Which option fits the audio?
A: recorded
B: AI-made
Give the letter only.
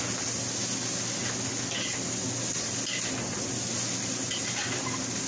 A